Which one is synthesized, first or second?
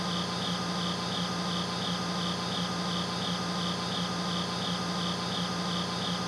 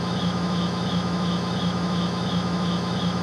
second